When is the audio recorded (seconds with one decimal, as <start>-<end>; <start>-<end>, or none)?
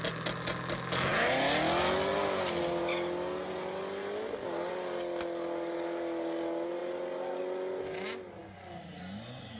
0.0-9.6